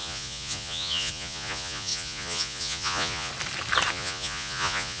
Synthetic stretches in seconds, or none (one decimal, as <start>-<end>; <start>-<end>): 0.0-3.3; 3.9-5.0

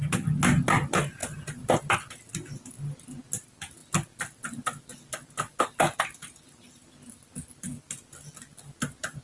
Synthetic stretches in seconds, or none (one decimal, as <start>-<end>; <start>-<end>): none

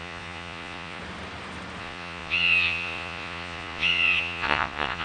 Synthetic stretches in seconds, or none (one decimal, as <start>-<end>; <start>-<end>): 0.0-1.0; 1.8-5.0

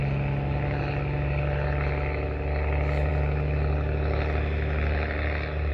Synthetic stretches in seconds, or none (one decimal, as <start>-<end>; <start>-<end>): none

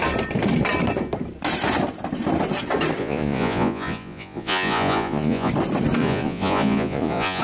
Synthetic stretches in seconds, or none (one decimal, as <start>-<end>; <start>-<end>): 3.0-5.5; 6.0-7.4

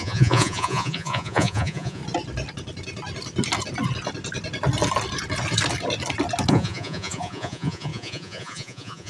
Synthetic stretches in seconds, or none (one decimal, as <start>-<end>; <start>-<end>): 0.0-2.0; 6.5-9.1

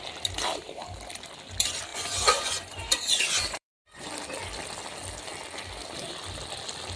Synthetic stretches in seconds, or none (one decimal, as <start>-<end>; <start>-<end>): 1.9-4.1